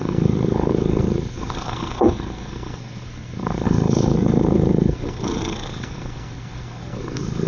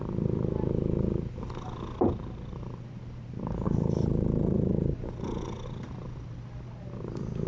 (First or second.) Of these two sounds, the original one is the second